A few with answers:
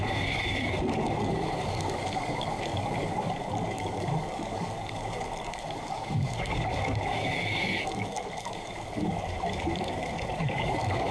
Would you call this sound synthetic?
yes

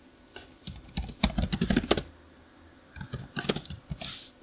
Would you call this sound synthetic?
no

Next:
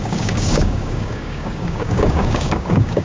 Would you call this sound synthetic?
yes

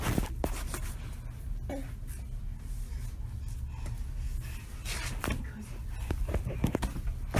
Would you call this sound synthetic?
no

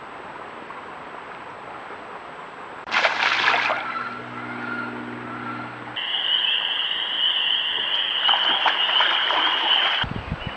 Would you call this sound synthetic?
no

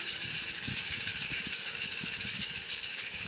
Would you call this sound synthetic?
yes